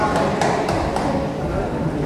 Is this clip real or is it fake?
real